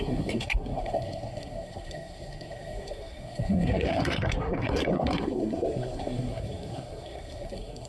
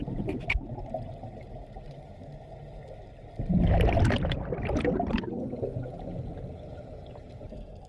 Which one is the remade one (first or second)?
first